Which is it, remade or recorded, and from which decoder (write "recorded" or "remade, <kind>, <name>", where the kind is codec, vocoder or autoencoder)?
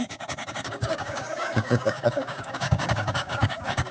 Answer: remade, codec, DAC